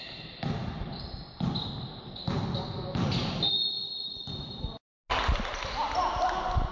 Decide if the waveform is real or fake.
real